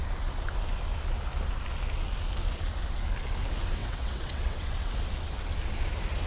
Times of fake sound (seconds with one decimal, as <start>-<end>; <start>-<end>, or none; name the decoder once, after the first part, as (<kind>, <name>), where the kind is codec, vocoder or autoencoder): 3.8-4.9 (vocoder, WaveNeXt)